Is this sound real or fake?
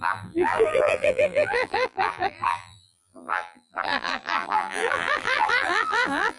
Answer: fake